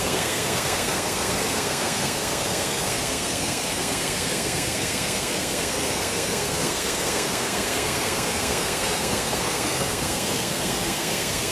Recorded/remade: remade